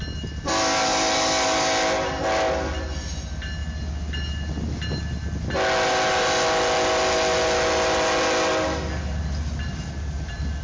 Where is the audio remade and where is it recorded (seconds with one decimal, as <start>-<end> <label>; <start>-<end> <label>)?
0.0-10.6 recorded